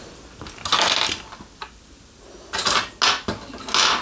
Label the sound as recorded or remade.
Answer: recorded